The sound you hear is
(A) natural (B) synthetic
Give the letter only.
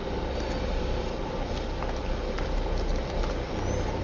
A